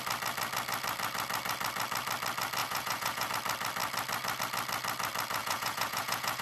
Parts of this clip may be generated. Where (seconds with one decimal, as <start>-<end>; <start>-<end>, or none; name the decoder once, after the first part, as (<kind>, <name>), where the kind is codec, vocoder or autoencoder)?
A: 2.6-3.3 (vocoder, Vocos); 5.4-6.4